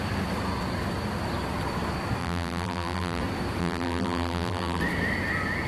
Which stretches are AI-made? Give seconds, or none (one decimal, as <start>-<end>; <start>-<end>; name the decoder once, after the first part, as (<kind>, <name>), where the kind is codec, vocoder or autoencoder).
2.2-3.2 (vocoder, BigVGAN v2); 3.6-4.8